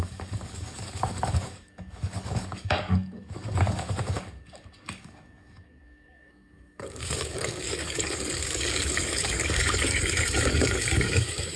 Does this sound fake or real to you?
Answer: fake